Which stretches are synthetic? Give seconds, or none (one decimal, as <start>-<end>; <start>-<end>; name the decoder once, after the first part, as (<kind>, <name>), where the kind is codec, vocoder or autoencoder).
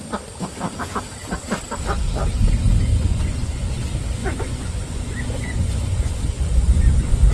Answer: 2.9-3.8 (vocoder, Vocos); 4.2-7.3